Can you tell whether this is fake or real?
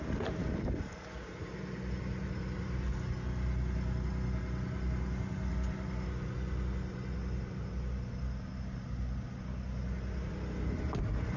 real